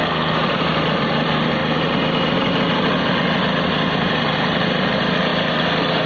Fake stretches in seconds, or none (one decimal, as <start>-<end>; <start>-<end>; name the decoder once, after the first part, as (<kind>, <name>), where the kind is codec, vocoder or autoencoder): 0.0-1.6 (vocoder, BigVGAN v2); 4.1-5.3